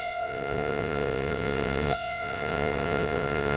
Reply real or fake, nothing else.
fake